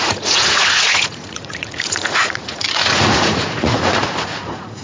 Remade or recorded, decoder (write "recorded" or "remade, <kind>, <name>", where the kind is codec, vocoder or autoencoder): remade, vocoder, Vocos